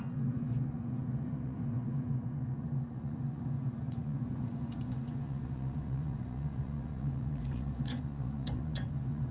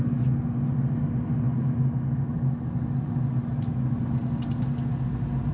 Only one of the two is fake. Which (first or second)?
first